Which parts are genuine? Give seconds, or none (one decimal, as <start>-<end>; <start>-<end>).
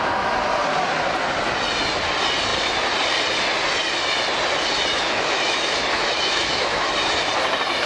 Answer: 0.0-4.9; 6.9-7.9